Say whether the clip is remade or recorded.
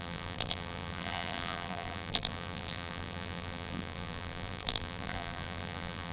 remade